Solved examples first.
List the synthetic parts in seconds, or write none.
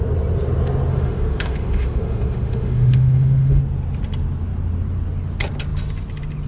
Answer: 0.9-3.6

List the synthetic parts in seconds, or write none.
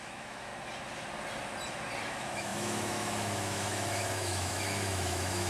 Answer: 0.0-0.5; 2.1-5.5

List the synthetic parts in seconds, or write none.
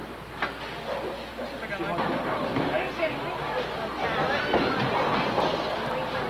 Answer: none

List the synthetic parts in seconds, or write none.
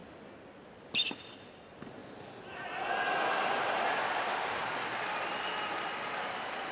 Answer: none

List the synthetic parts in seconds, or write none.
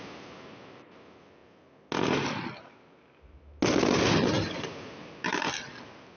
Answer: none